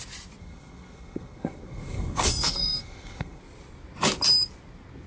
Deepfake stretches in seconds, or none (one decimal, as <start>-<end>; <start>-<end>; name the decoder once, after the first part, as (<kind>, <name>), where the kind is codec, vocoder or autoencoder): 0.4-3.4 (codec, SNAC)